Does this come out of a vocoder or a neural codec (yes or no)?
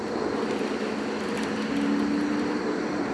no